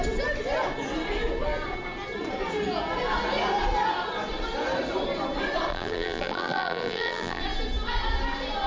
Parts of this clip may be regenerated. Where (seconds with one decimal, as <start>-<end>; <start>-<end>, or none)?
5.7-7.4